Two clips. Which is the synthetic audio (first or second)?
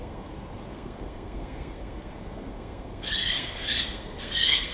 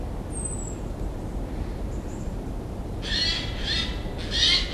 first